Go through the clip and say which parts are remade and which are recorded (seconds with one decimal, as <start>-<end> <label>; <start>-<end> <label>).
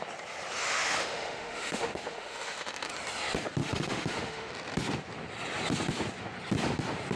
0.0-0.6 recorded; 0.6-2.9 remade; 2.9-3.6 recorded; 3.6-4.5 remade; 4.5-7.2 recorded